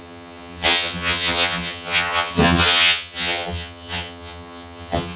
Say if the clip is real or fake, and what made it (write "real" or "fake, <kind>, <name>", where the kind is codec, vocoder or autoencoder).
fake, vocoder, HiFi-GAN